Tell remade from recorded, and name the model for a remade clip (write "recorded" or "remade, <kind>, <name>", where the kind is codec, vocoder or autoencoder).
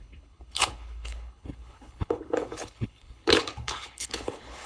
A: remade, codec, HILCodec